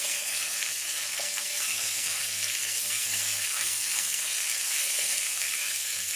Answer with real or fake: fake